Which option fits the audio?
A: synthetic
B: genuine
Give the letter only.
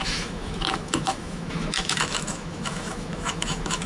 A